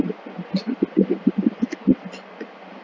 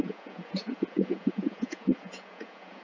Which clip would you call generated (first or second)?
second